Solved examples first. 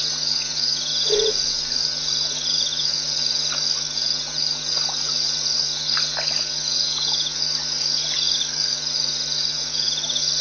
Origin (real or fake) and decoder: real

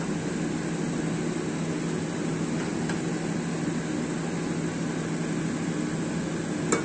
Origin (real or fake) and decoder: real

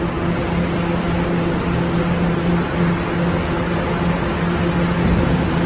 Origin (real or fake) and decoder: real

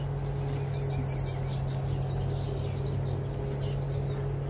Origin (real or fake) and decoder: real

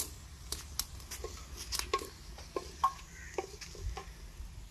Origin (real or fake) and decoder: real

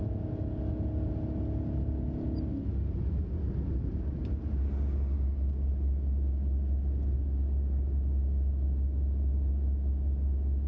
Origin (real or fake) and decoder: real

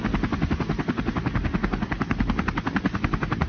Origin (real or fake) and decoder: real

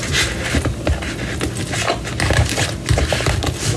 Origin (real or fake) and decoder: real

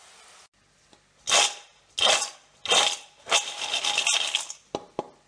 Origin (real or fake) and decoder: real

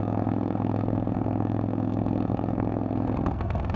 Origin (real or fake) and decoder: fake, codec, SNAC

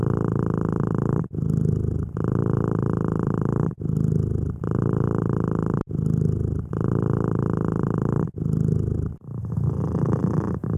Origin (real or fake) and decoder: real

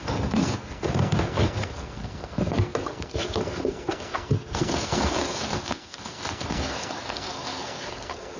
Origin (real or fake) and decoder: fake, codec, SNAC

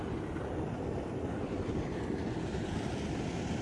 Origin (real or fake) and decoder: real